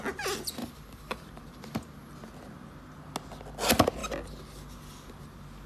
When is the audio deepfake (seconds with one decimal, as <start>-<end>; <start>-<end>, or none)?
0.6-1.6